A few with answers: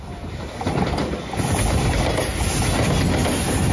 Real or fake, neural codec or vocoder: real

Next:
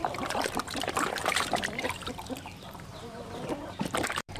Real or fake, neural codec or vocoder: fake, vocoder, BigVGAN v2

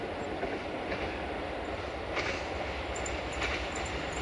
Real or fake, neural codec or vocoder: fake, vocoder, BigVGAN v2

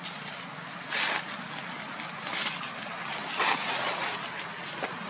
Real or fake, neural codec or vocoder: real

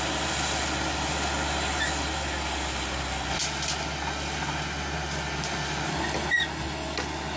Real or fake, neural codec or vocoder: real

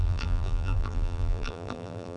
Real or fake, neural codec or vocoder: fake, vocoder, BigVGAN v2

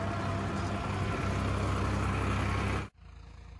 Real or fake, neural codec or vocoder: real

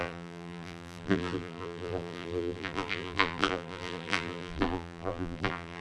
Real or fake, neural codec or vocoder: fake, vocoder, BigVGAN v2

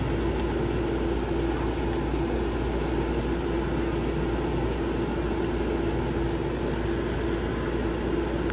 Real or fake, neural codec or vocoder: real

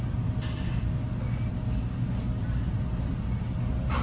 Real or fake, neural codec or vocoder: real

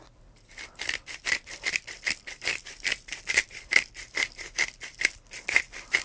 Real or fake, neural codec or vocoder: fake, vocoder, BigVGAN v2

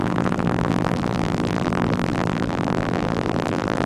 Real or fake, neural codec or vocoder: fake, vocoder, BigVGAN v2